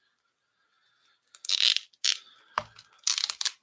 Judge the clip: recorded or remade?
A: recorded